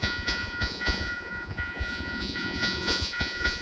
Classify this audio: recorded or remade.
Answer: remade